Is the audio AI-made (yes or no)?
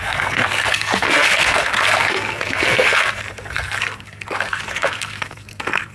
yes